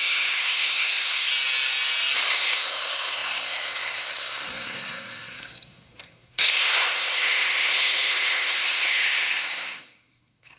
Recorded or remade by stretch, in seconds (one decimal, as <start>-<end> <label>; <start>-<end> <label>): 0.0-1.3 remade; 1.3-2.3 recorded; 2.3-10.6 remade